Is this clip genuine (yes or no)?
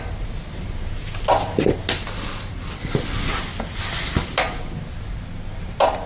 yes